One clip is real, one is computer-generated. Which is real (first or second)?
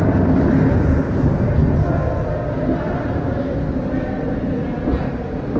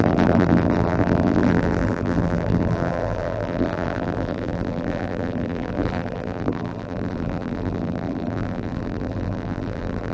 first